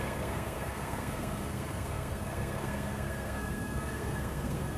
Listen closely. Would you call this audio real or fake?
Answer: fake